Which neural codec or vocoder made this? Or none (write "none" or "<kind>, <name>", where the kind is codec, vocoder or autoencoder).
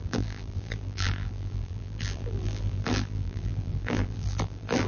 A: vocoder, BigVGAN v2